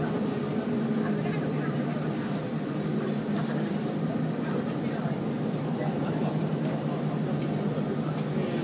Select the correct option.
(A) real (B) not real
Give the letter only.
A